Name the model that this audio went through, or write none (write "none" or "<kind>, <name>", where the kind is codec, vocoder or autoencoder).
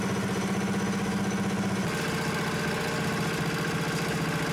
none